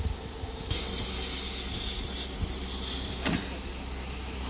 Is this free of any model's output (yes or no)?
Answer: yes